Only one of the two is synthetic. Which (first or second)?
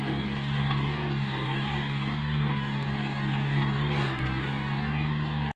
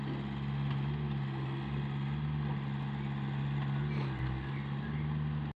first